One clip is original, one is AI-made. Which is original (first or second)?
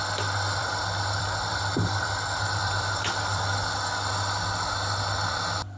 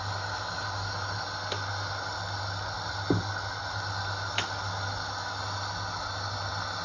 second